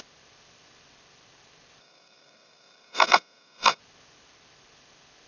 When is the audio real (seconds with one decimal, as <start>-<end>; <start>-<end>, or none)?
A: 0.0-1.8; 3.8-5.3

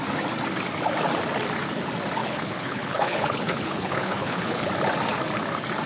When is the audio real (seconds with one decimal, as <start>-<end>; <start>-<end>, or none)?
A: 0.0-2.2; 4.7-5.9